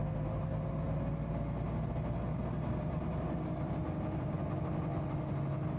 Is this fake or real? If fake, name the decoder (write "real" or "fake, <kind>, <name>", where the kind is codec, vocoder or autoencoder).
real